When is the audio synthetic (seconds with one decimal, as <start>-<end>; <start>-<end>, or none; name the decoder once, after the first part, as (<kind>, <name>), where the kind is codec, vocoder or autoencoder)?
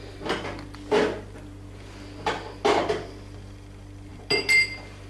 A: none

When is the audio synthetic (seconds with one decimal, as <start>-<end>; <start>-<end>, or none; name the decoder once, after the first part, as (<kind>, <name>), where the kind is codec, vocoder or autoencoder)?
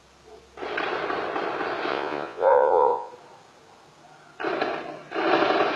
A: 1.9-3.1 (vocoder, Vocos)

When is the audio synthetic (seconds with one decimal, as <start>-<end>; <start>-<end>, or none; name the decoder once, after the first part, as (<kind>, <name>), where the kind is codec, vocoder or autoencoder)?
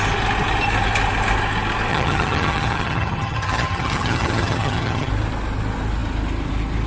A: 1.9-5.1 (vocoder, HiFi-GAN)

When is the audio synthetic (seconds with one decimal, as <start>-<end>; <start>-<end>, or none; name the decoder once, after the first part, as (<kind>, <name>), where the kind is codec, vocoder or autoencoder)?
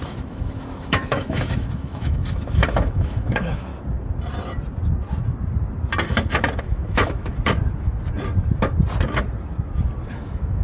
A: 0.0-3.7 (autoencoder, DAC-VAE); 6.6-7.3; 10.1-10.6